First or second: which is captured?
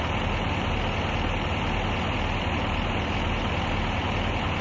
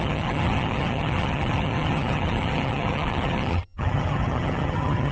first